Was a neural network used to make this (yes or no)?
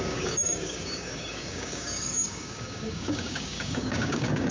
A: yes